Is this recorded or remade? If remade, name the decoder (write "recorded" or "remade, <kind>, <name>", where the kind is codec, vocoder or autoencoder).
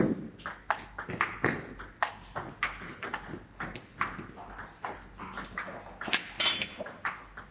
recorded